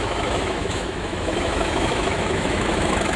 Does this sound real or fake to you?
fake